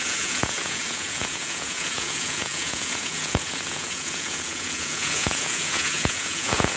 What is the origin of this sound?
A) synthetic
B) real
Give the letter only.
A